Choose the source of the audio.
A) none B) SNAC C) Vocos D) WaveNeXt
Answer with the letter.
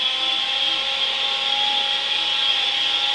A